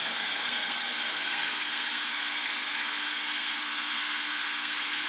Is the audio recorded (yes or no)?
no